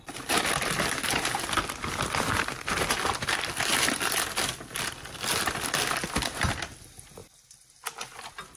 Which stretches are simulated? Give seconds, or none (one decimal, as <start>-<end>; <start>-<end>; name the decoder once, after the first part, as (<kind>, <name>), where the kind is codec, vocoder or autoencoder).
none